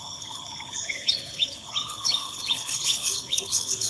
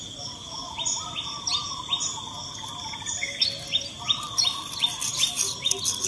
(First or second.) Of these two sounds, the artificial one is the first